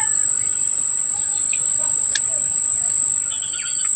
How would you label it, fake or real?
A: real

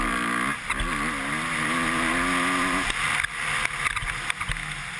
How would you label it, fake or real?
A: real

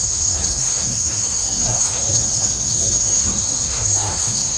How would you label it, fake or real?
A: fake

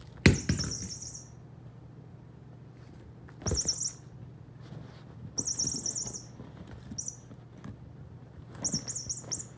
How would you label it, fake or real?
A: real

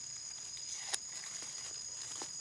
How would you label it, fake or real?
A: real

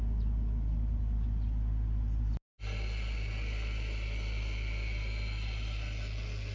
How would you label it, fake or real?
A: real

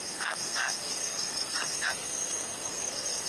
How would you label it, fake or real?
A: fake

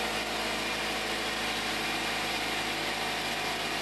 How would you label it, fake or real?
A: real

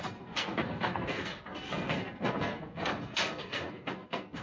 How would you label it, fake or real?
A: fake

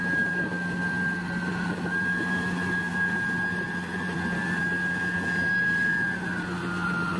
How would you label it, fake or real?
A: real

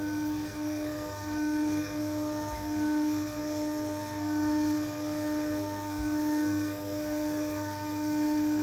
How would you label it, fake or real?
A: fake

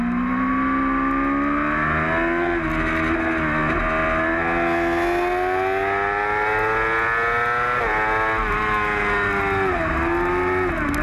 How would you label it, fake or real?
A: real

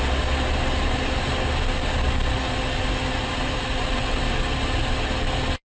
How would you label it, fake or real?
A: real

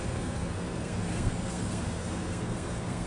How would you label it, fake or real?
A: fake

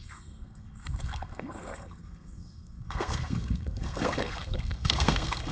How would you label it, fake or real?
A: fake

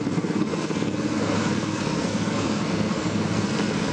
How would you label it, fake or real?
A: fake